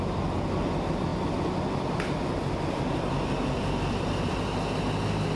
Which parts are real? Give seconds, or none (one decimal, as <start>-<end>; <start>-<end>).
0.0-1.1; 4.3-5.4